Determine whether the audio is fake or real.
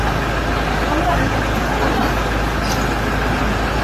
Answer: real